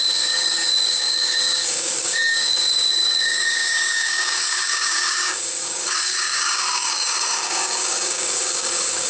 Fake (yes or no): yes